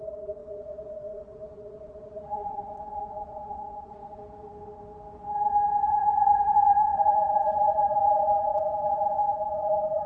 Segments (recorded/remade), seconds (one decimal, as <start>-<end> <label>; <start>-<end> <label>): 0.0-4.2 remade; 4.2-5.9 recorded; 5.9-10.1 remade